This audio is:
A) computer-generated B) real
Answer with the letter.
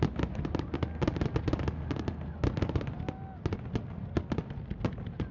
B